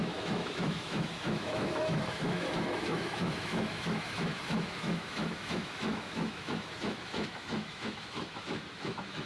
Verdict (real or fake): fake